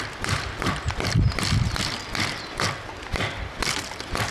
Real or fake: real